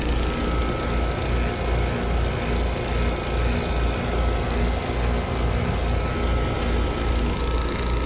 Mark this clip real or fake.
real